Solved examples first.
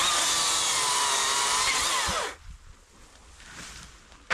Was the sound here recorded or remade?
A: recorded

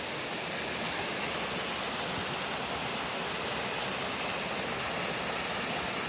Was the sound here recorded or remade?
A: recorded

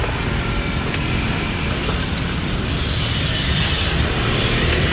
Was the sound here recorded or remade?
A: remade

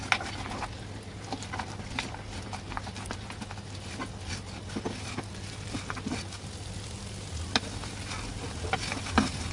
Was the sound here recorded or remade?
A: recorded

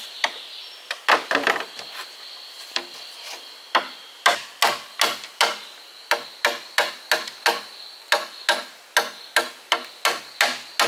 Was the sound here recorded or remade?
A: recorded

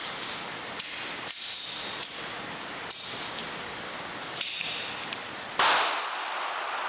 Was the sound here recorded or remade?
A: recorded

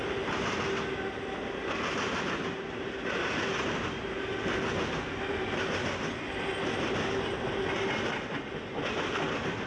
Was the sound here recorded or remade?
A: recorded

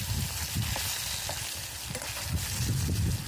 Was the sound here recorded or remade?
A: recorded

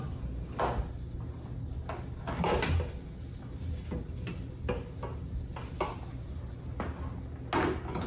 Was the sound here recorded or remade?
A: recorded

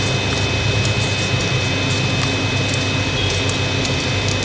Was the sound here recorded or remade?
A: recorded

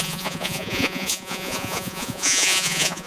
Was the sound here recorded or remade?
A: remade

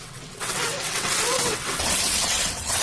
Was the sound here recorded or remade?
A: remade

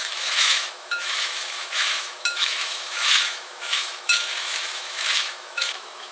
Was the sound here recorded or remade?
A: remade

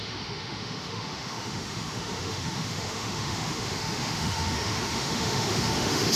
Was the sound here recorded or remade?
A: remade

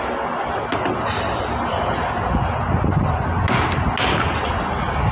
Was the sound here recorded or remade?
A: recorded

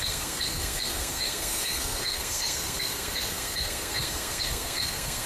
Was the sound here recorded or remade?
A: remade